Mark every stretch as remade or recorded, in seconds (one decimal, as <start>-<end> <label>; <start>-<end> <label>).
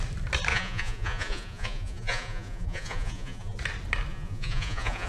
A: 0.0-0.5 recorded; 0.5-3.6 remade; 3.6-4.1 recorded; 4.1-5.1 remade